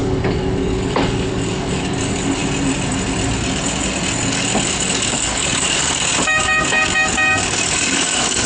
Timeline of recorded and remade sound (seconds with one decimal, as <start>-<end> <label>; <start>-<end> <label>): 0.0-2.4 remade; 2.4-4.3 recorded; 4.3-8.5 remade